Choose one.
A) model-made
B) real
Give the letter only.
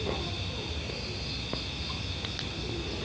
B